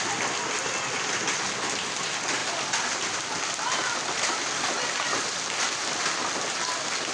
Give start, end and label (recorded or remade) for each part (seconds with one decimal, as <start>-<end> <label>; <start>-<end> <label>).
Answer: 0.0-7.1 recorded